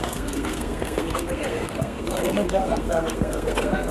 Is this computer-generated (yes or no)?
yes